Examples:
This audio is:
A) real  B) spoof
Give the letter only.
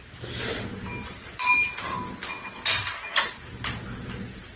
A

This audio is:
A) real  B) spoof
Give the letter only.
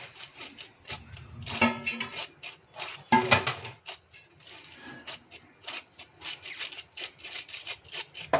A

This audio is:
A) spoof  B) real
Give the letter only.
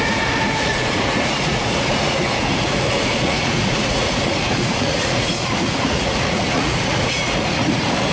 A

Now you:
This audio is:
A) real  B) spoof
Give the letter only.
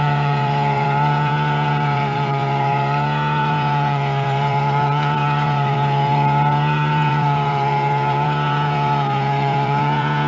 B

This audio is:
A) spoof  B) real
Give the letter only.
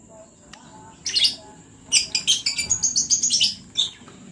B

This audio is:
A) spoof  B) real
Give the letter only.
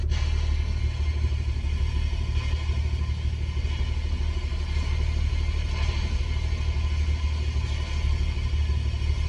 B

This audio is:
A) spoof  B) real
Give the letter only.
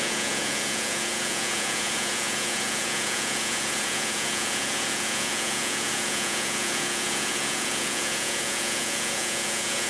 A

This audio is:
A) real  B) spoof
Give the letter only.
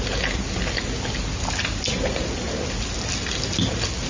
A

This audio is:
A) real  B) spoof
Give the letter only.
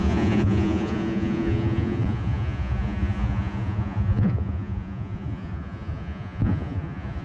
B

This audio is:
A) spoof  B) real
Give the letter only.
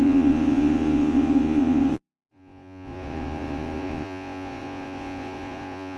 A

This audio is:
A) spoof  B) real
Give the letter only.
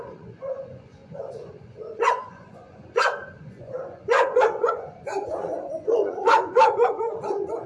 A